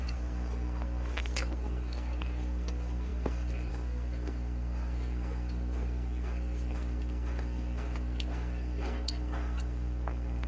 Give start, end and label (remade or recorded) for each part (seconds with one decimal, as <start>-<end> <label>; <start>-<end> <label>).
0.0-10.5 remade